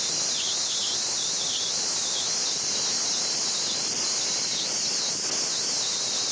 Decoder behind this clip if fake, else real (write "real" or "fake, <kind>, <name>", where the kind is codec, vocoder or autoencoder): real